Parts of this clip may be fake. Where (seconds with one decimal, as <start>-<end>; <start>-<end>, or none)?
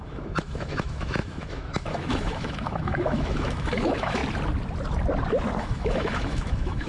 0.0-4.2; 5.6-6.9